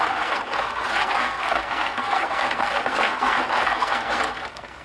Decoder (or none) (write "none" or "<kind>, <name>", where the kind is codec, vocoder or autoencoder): codec, SNAC